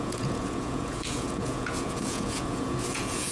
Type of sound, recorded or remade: remade